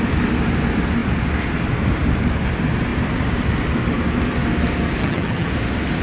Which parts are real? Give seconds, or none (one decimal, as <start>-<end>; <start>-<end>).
0.0-5.0; 5.5-6.0